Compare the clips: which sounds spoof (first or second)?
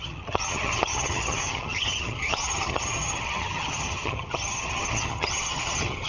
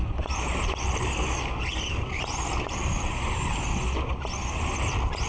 first